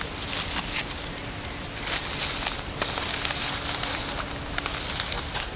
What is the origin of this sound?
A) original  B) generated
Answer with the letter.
A